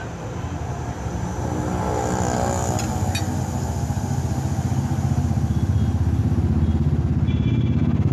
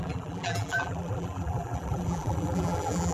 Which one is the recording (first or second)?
first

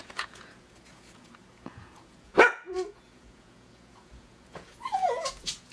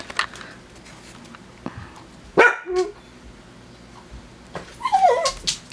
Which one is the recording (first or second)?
second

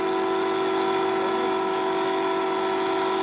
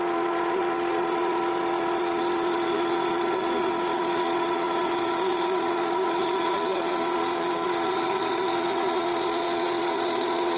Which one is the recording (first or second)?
first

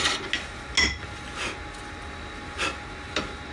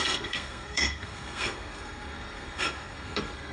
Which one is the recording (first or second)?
first